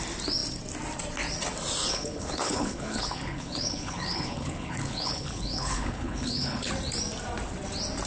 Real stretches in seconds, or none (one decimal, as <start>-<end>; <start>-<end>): 0.0-1.8; 6.7-8.1